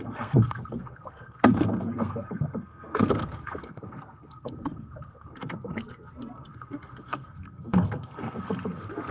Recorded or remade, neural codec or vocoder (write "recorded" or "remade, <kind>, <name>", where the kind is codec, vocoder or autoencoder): remade, codec, SNAC